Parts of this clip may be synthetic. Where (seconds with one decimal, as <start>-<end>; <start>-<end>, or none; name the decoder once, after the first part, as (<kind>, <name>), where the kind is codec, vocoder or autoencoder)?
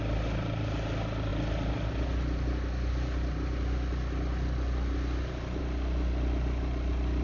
none